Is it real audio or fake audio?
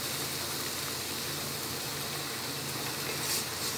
real